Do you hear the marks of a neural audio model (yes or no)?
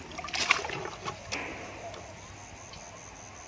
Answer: no